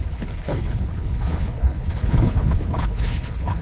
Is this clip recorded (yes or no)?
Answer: no